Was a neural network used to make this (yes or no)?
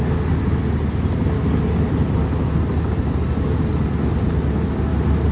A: no